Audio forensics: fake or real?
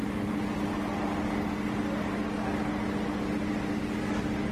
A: real